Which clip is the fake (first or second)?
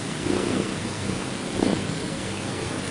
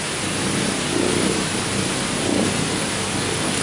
first